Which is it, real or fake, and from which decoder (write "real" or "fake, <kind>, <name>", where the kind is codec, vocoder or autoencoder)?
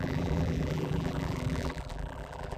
fake, vocoder, BigVGAN v2